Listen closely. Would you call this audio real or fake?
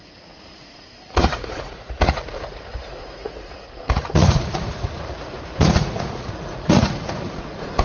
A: fake